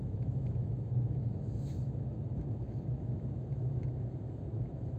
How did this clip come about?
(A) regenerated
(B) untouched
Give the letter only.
A